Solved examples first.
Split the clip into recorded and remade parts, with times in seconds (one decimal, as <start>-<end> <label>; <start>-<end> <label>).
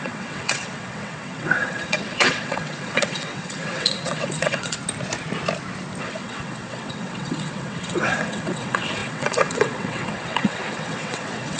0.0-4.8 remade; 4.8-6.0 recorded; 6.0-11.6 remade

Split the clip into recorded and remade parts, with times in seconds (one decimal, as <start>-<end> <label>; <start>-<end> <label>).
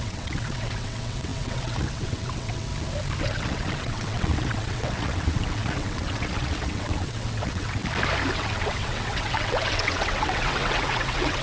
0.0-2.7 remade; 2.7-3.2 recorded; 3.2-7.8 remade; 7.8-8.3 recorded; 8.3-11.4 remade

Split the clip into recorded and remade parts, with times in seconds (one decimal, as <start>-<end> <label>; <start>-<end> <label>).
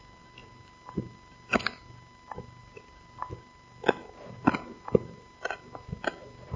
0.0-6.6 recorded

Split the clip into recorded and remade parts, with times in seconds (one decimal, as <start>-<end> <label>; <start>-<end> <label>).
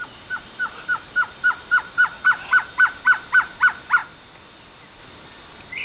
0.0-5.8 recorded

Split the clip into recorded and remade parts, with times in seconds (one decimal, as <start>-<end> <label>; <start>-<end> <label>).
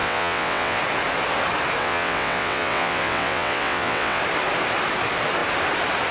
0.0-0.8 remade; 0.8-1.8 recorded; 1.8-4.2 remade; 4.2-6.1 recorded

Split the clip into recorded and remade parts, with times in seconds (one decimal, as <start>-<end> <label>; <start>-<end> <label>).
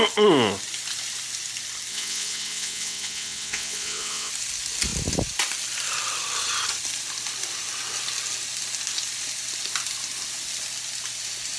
0.0-1.9 recorded; 1.9-4.3 remade; 4.3-11.6 recorded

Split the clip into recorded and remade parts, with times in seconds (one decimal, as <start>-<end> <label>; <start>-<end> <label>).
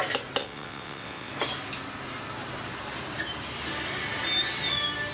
0.0-0.4 recorded; 0.4-1.3 remade; 1.3-5.1 recorded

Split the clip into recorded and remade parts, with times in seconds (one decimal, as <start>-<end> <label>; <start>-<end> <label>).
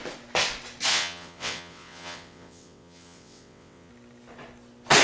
0.0-0.9 recorded; 0.9-3.9 remade; 3.9-5.0 recorded